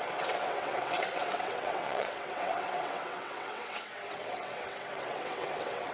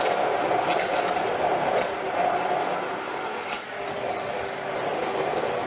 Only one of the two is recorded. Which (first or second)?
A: second